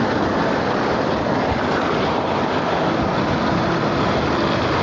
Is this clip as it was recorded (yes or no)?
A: yes